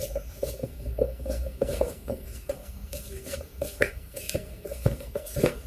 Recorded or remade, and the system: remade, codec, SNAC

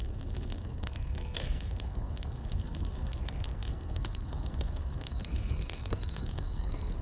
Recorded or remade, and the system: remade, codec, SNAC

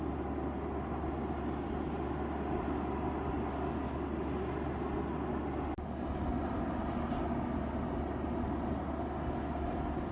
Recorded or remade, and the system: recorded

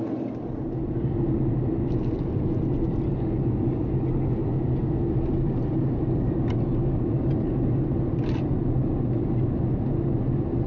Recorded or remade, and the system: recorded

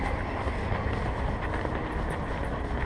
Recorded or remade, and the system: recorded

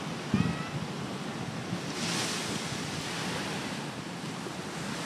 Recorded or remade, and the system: recorded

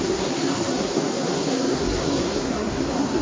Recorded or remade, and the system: remade, codec, SNAC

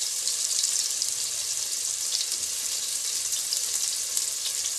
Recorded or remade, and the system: recorded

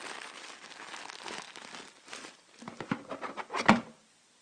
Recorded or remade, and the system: recorded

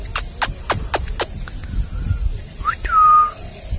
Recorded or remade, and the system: recorded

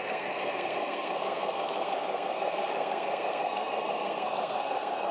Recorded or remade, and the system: remade, codec, SNAC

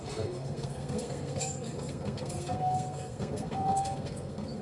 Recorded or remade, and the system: remade, codec, SNAC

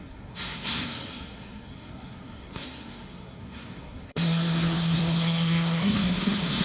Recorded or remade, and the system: remade, codec, SNAC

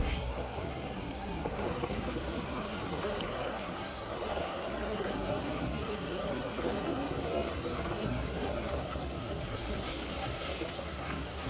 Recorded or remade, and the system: remade, codec, SNAC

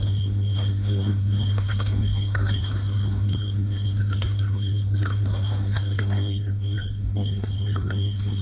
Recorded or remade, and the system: remade, codec, SNAC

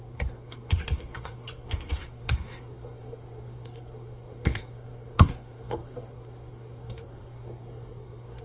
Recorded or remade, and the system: remade, codec, SNAC